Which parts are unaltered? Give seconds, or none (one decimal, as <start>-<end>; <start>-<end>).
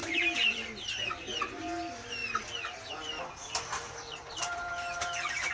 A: 1.4-3.4